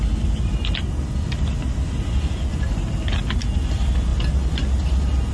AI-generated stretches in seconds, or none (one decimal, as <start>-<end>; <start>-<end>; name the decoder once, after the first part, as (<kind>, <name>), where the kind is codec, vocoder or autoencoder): none